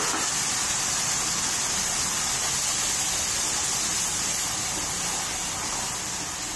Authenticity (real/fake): real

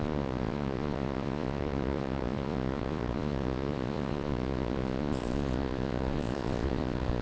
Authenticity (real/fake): fake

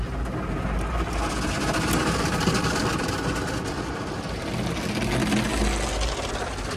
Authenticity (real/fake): real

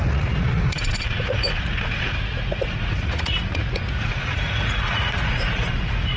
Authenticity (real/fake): fake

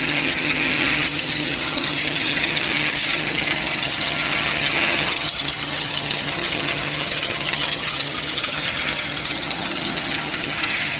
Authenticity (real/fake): fake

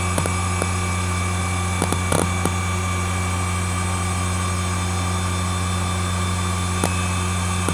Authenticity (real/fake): real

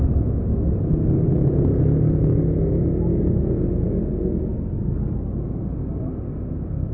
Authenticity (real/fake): real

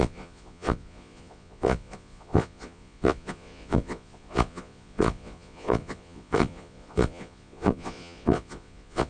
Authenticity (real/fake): fake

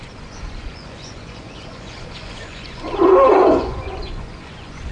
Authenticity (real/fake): fake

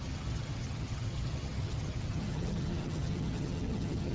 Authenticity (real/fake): fake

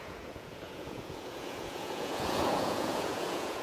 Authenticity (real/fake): fake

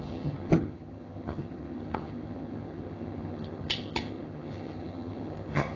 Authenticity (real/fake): fake